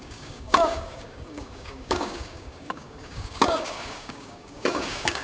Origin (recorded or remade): remade